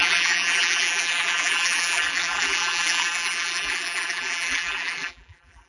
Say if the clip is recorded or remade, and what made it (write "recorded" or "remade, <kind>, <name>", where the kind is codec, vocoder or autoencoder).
remade, vocoder, BigVGAN v2